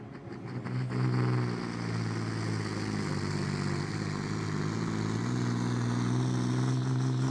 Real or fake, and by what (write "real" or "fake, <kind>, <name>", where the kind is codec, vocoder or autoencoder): real